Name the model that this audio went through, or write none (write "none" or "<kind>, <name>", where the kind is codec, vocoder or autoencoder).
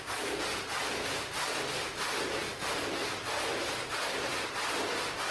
none